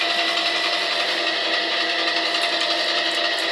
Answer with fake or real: real